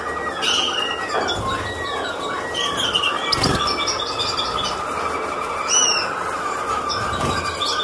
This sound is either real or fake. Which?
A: real